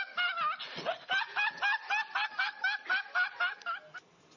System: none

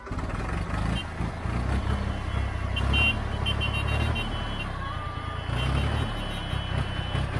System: none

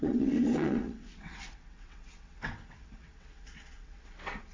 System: vocoder, WaveNeXt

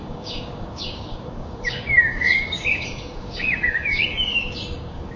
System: codec, DAC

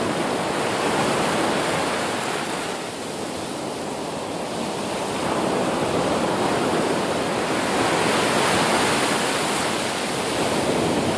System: none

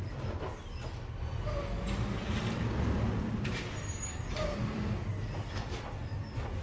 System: none